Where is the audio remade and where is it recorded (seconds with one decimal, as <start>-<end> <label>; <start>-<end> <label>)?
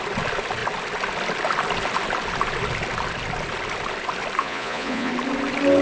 0.0-4.4 recorded; 4.4-5.1 remade; 5.1-5.8 recorded